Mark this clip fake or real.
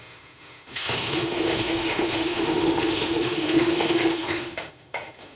fake